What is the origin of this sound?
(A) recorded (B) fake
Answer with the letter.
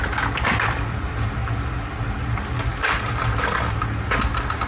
A